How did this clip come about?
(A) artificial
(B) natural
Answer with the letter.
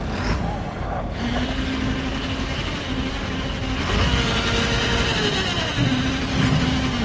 B